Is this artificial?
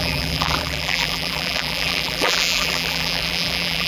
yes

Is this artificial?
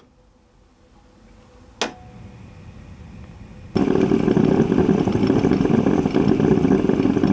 no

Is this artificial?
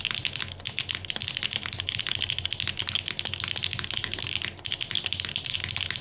no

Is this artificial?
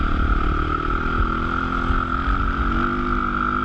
no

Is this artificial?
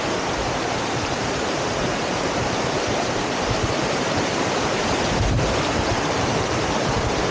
yes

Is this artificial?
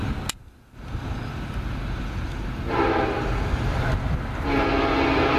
no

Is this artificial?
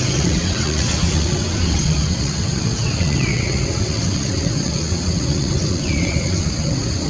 yes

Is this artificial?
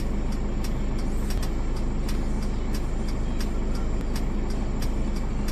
no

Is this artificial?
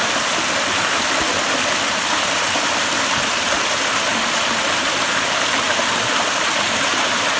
no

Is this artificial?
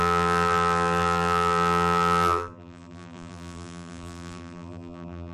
yes